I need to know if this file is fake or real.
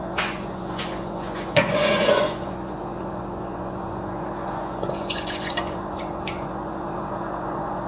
fake